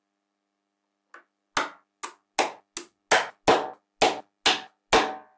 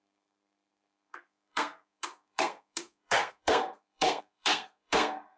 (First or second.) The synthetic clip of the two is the second